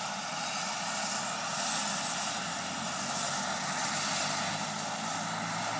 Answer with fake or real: real